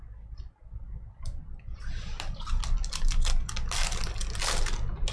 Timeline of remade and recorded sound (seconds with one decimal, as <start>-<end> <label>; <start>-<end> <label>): 0.0-5.1 recorded